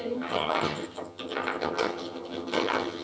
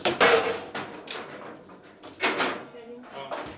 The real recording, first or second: second